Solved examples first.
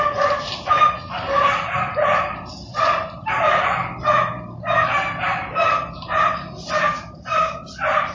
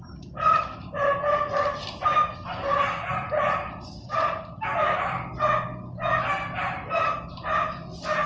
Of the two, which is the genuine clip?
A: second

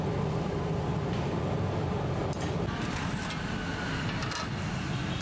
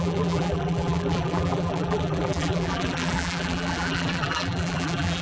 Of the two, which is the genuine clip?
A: first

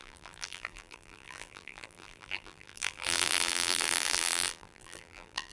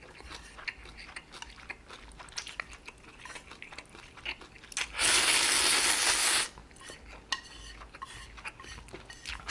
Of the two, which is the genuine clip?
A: second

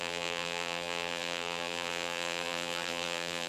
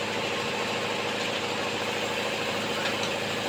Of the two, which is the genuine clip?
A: second